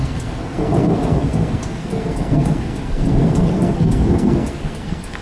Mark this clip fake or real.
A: fake